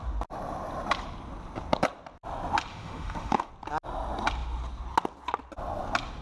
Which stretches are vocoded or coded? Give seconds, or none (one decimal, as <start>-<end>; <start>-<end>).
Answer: 2.7-3.5